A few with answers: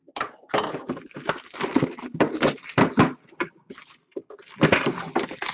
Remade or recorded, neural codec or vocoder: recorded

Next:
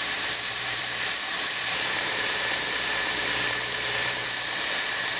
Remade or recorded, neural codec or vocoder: remade, vocoder, BigVGAN v2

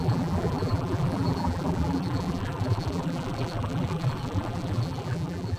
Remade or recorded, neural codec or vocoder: remade, vocoder, BigVGAN v2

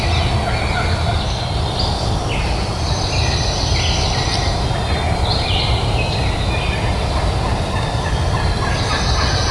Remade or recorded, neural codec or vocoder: recorded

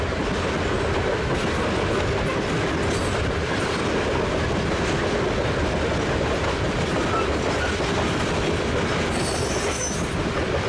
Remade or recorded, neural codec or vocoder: recorded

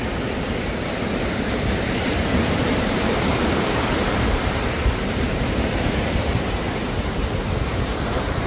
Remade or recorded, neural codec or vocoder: remade, vocoder, BigVGAN v2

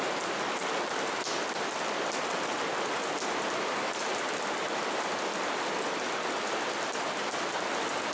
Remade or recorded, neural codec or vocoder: recorded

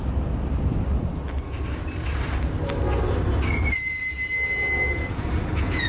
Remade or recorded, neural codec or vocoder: recorded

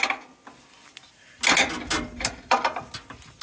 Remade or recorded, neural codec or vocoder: recorded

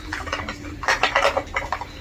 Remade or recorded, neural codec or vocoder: recorded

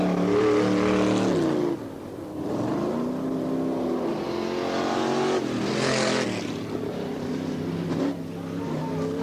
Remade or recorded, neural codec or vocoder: recorded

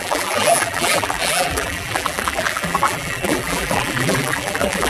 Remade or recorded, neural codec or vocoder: remade, vocoder, BigVGAN v2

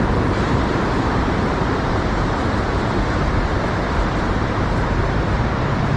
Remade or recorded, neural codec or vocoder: remade, vocoder, BigVGAN v2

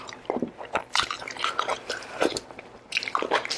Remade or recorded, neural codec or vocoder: remade, vocoder, BigVGAN v2